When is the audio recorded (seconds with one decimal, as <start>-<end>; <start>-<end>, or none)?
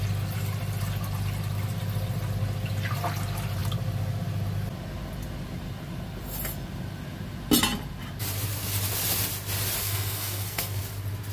0.0-9.8; 10.8-11.3